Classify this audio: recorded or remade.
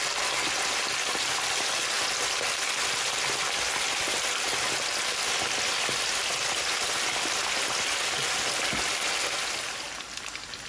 recorded